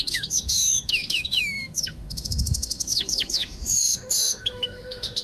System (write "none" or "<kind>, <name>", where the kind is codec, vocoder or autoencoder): autoencoder, DAC-VAE